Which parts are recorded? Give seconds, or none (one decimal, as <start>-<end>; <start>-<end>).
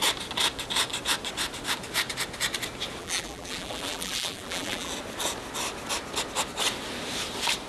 0.0-3.0; 4.9-7.7